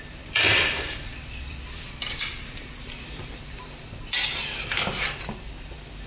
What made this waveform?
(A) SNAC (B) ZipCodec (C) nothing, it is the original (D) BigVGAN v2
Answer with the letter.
D